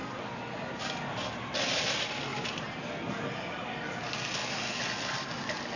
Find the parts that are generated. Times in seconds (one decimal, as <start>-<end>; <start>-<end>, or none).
0.0-0.8